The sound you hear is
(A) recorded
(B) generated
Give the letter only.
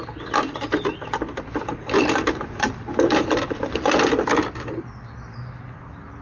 A